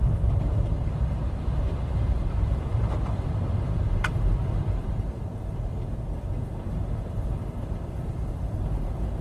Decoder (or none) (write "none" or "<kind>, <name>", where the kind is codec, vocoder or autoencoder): vocoder, BigVGAN v2